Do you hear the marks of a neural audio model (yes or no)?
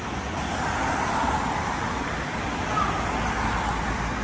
no